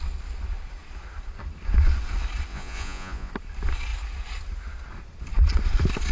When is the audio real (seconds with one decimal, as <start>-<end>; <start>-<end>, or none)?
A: 0.0-2.5; 3.3-6.1